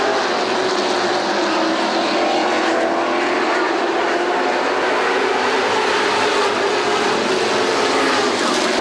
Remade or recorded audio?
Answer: recorded